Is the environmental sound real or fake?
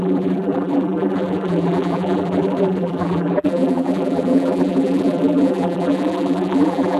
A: fake